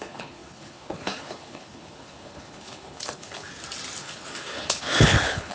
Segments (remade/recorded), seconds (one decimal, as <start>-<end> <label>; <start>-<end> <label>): 0.0-3.5 remade; 3.5-4.0 recorded; 4.0-5.5 remade